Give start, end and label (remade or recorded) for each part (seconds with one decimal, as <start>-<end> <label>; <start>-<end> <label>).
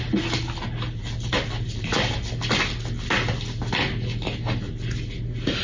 0.0-5.6 recorded